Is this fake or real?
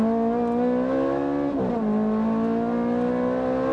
real